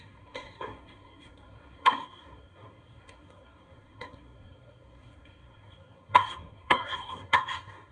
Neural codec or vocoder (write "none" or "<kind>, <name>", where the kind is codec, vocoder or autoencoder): codec, SNAC